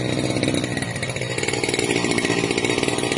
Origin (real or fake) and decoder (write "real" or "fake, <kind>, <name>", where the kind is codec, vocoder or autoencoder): real